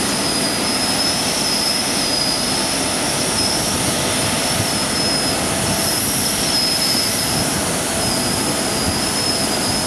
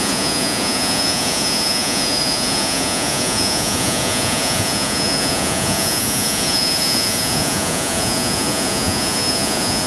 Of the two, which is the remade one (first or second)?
second